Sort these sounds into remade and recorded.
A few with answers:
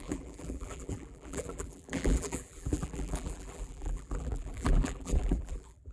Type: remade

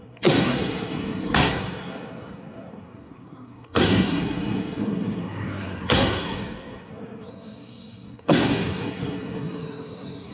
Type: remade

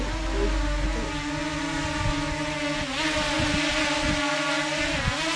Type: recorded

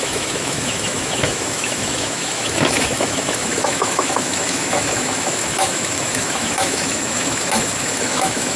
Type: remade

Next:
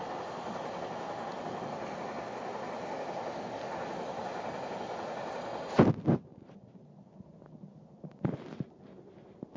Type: recorded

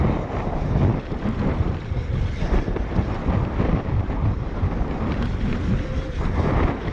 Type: recorded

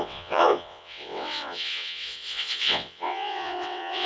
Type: remade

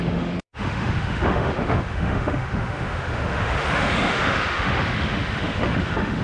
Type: remade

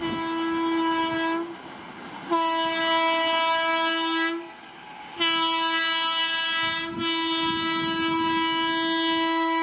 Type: recorded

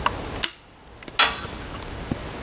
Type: recorded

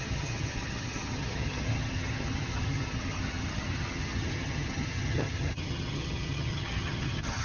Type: remade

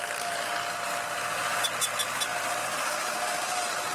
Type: recorded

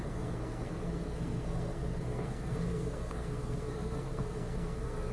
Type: remade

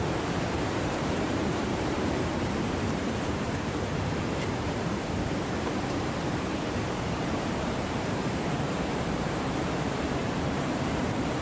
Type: remade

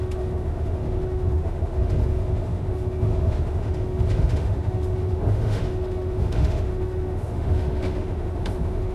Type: remade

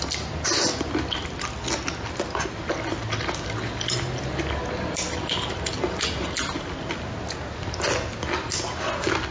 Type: recorded